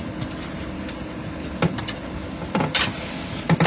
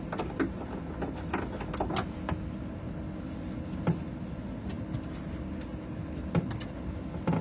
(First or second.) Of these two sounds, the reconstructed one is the first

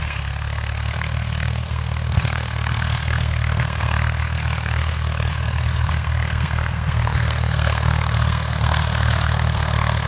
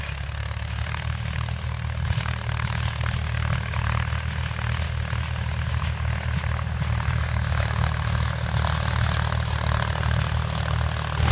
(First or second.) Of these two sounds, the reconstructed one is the first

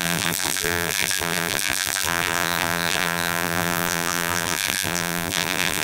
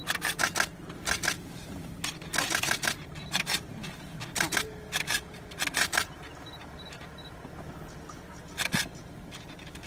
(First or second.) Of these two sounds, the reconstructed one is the first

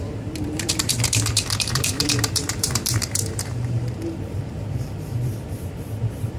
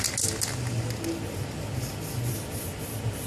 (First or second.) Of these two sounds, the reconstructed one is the first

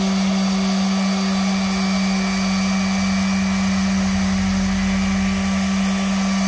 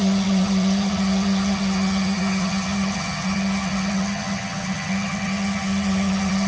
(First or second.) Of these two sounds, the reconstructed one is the second